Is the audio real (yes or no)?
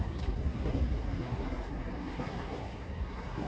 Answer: no